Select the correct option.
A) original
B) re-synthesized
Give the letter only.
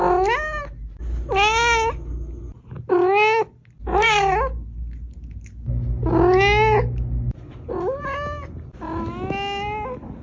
A